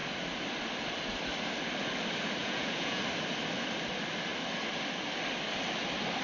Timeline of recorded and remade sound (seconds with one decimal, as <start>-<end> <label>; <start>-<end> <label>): 0.0-2.4 recorded; 2.4-3.0 remade; 3.0-6.2 recorded